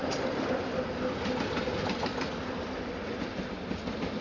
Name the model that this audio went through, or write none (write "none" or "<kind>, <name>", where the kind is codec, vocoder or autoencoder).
none